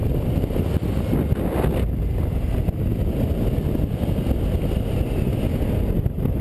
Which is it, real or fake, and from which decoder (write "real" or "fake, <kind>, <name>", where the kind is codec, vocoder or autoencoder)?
real